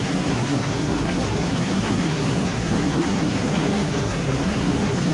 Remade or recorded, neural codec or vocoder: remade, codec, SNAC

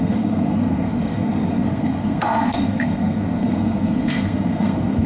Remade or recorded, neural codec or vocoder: remade, codec, SNAC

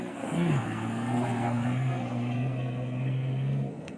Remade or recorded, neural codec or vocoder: remade, codec, SNAC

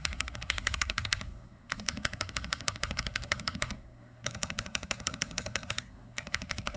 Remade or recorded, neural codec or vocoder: remade, codec, SNAC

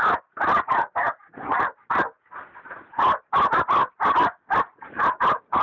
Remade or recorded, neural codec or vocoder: recorded